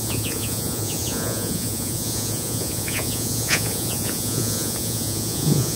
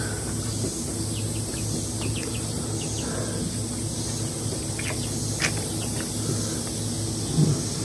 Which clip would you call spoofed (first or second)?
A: first